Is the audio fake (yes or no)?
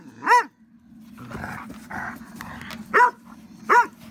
no